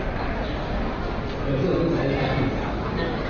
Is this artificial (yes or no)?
no